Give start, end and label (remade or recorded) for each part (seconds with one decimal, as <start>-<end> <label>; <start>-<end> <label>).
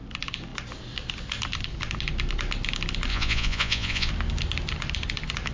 0.0-3.1 recorded; 3.1-4.1 remade; 4.1-5.5 recorded